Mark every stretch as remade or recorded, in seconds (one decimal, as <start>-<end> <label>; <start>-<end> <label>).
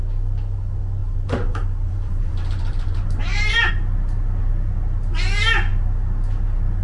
0.0-1.0 recorded; 1.0-3.7 remade; 3.7-6.8 recorded